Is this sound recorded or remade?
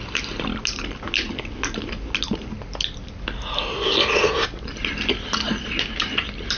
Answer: recorded